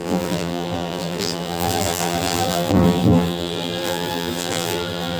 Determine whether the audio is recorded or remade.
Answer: remade